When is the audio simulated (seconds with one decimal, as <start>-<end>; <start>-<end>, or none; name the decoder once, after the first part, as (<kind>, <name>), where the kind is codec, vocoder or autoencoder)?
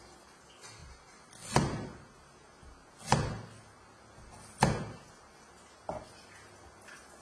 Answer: none